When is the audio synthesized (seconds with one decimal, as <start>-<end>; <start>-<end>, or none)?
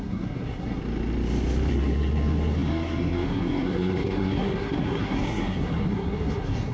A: 0.0-0.8; 1.7-6.7